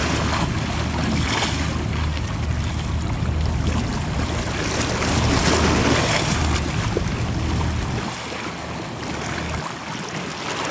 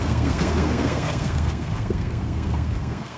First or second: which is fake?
second